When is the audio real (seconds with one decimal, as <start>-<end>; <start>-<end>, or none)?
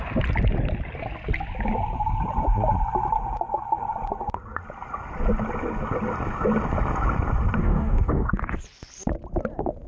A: 0.0-7.6; 8.3-9.9